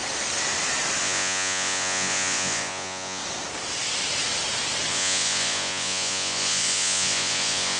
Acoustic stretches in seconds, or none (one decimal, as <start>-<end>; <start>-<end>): 0.0-1.0; 3.2-4.9